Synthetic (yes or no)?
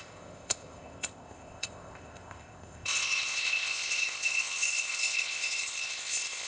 yes